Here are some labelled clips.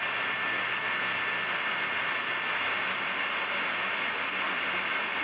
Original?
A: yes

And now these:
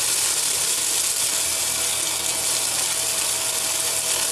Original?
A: yes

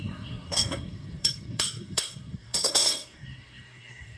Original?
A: no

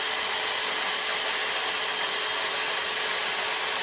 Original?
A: yes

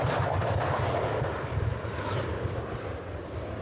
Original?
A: yes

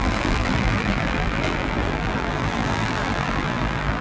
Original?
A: no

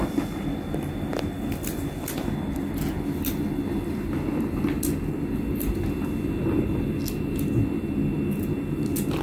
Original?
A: yes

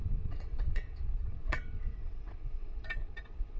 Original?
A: no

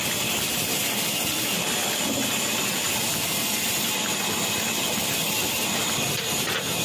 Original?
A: yes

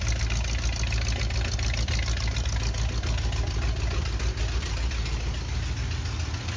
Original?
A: yes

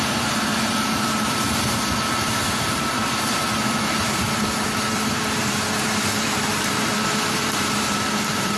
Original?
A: no